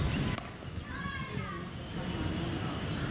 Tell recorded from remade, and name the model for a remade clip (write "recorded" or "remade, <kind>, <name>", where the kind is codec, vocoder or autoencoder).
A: recorded